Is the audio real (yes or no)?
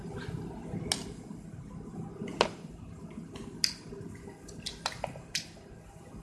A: yes